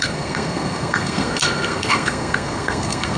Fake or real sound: fake